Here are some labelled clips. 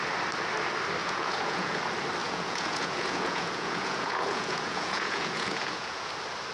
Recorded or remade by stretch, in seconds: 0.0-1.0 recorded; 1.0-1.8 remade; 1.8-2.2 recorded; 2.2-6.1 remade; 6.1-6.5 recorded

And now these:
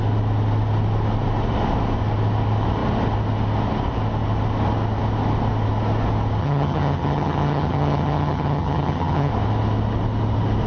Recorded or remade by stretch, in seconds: 0.0-6.4 recorded; 6.4-9.3 remade; 9.3-10.7 recorded